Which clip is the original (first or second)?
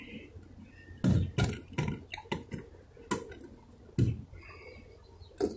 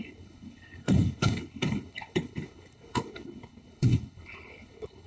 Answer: first